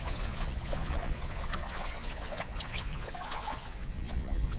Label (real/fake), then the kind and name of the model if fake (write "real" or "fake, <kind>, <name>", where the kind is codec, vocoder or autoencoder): fake, vocoder, Vocos